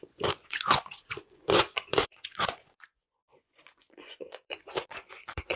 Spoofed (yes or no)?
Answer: yes